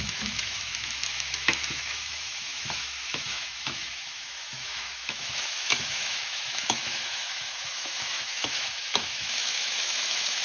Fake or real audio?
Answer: fake